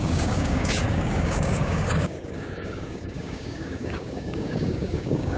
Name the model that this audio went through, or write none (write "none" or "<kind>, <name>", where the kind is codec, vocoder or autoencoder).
codec, DAC